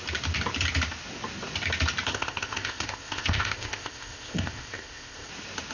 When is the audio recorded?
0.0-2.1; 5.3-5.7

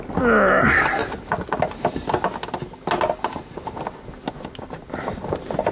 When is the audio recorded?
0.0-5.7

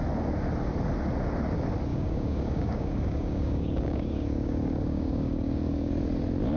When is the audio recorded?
0.0-1.9; 5.9-6.6

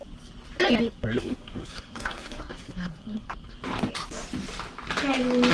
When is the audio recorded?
0.0-0.8; 3.3-5.5

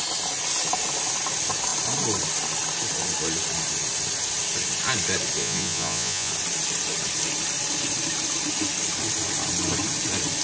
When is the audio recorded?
0.0-5.4; 6.3-10.4

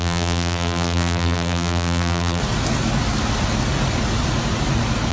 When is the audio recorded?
2.4-5.1